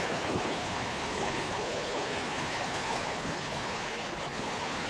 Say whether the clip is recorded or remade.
remade